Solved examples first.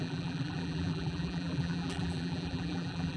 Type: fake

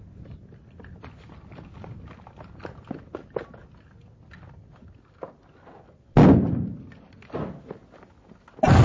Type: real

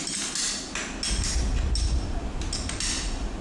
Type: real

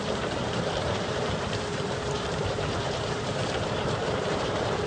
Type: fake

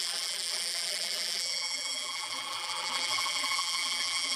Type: fake